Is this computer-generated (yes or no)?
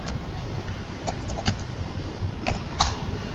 yes